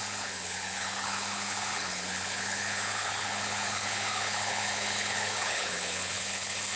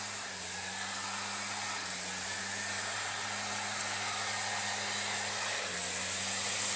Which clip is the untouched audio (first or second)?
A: second